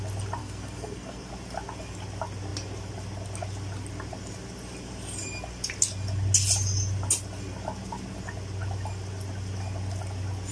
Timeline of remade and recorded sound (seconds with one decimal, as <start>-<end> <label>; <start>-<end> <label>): 0.0-0.4 recorded; 0.4-1.3 remade; 1.3-10.5 recorded